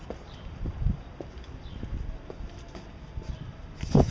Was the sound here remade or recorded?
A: recorded